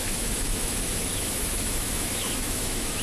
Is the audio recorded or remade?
remade